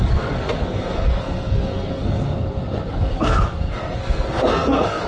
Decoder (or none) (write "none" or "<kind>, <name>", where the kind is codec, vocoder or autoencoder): codec, SNAC